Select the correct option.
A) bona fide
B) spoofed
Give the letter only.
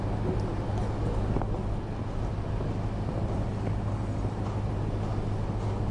A